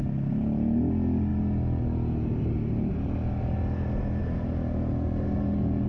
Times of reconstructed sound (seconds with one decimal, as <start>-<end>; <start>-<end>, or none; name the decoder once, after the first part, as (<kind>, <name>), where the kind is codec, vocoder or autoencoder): none